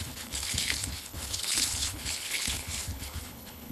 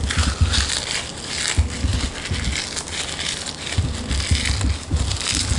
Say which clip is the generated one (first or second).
first